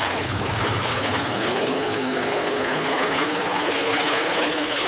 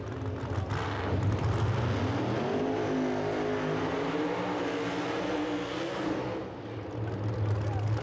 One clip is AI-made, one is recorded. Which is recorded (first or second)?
second